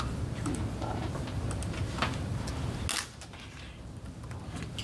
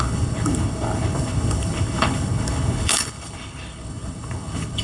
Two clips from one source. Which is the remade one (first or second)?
second